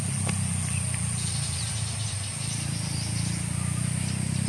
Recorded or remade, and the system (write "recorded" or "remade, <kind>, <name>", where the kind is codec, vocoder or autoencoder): recorded